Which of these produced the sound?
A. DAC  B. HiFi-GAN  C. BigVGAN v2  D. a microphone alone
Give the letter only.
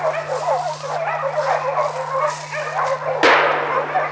D